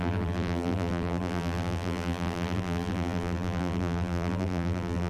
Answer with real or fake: fake